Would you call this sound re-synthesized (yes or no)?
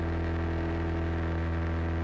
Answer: no